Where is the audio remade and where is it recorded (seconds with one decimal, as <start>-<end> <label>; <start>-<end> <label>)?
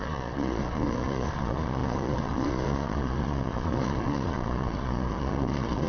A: 0.0-5.9 remade